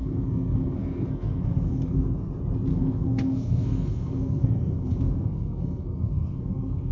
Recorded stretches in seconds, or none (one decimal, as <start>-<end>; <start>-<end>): 2.3-2.7